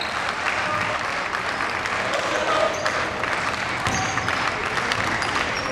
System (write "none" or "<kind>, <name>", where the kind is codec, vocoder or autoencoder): none